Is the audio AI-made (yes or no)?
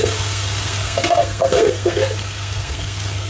yes